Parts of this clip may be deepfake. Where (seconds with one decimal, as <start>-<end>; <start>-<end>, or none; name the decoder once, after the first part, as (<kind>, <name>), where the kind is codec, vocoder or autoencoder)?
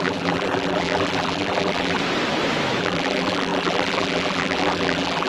0.0-2.0 (vocoder, BigVGAN v2); 2.8-5.3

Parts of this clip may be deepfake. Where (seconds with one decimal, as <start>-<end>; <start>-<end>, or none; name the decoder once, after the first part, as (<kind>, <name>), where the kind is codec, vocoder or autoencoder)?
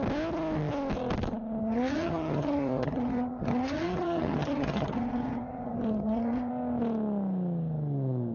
1.6-6.5 (vocoder, HiFi-GAN)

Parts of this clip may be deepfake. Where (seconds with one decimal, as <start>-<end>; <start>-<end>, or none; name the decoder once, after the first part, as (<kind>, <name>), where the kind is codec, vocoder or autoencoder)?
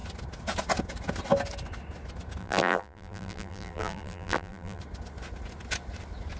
2.4-4.8 (vocoder, BigVGAN v2)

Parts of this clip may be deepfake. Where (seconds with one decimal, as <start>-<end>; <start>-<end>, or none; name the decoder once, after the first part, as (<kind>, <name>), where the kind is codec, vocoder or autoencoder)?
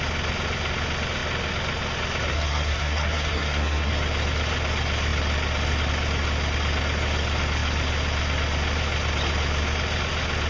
2.3-3.9 (codec, SNAC)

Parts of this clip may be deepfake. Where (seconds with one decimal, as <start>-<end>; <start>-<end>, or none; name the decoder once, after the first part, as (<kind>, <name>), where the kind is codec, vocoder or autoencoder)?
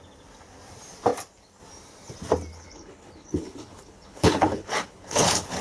2.5-5.6 (codec, HILCodec)